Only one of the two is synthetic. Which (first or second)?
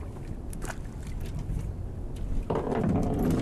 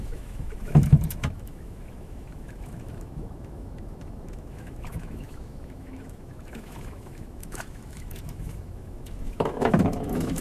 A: second